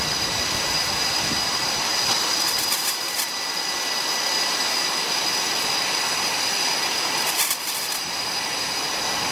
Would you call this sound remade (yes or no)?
no